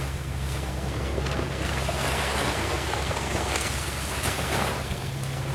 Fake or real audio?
fake